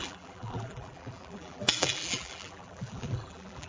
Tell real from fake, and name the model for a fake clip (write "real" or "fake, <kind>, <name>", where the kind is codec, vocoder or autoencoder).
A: fake, vocoder, BigVGAN v2